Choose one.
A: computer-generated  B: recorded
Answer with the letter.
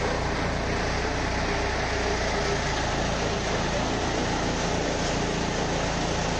B